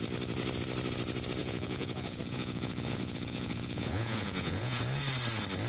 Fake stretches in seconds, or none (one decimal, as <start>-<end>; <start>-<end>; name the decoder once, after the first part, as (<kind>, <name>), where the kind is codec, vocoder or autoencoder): 1.4-4.8 (vocoder, Vocos)